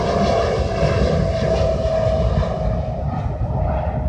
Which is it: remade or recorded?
recorded